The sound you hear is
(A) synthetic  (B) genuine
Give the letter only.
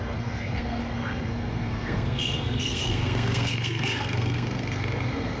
A